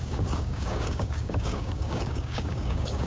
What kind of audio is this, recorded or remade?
remade